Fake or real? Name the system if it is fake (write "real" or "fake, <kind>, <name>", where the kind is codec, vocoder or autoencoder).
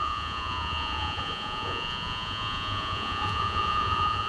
fake, vocoder, Vocos